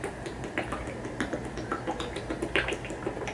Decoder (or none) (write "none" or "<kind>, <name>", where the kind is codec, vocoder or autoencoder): vocoder, BigVGAN v2